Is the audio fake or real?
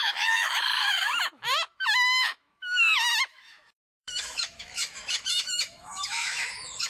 fake